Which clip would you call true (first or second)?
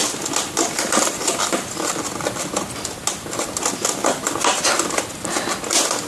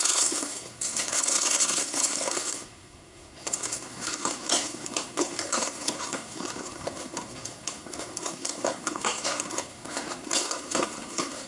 first